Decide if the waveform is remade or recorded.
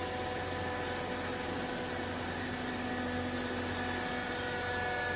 recorded